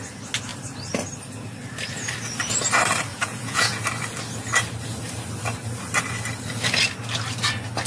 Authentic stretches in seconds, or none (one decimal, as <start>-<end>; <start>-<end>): 0.0-3.1; 3.8-7.9